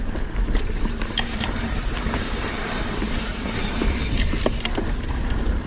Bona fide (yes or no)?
no